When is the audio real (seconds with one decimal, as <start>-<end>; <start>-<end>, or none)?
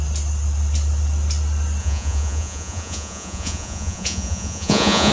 0.0-1.8